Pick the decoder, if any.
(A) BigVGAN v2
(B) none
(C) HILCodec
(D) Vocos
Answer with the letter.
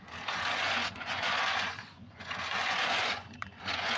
D